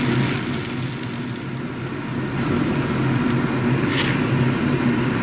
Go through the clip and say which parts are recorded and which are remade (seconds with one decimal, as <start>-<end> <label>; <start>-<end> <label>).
0.0-5.2 recorded